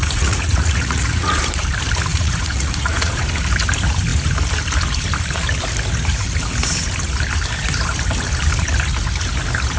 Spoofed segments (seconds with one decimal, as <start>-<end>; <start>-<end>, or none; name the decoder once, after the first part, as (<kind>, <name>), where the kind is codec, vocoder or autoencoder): 0.0-1.4 (vocoder, Vocos); 2.1-3.2